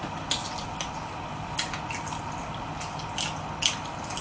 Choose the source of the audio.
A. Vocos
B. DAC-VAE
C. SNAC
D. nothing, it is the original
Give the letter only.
D